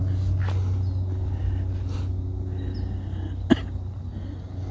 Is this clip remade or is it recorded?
recorded